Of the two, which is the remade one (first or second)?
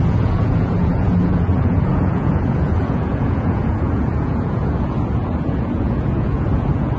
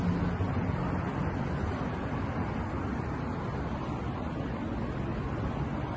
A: first